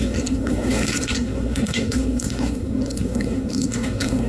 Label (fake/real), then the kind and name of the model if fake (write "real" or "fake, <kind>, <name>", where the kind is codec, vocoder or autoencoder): fake, codec, SNAC